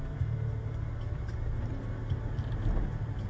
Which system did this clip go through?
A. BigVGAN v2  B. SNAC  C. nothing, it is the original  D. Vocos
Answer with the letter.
C